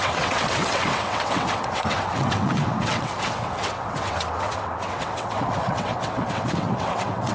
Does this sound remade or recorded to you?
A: remade